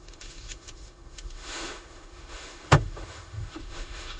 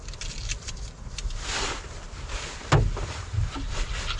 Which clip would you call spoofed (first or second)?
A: first